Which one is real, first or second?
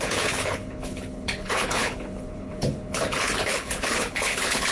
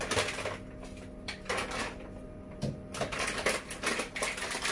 second